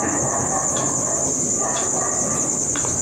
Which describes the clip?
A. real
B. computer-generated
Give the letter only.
A